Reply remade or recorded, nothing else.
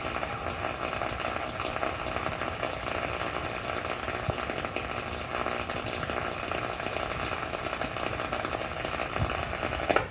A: recorded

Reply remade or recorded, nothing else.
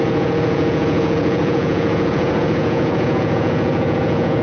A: remade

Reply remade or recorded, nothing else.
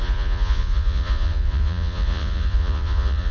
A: remade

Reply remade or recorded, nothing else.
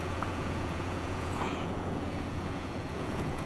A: remade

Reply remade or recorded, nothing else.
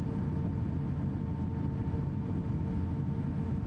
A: recorded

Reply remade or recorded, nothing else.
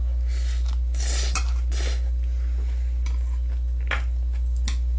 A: recorded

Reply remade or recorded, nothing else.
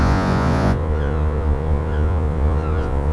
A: remade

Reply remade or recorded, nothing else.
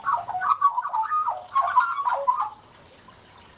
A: recorded